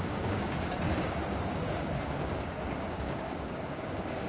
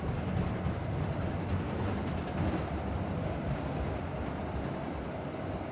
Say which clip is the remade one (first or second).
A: first